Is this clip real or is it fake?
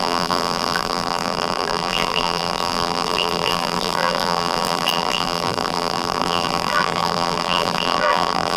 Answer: fake